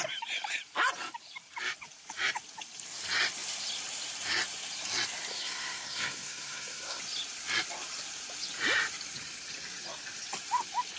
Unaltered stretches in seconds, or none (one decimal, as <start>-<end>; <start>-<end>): 0.0-5.3; 7.0-11.0